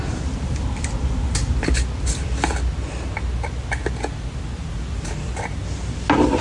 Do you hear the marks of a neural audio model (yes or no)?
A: no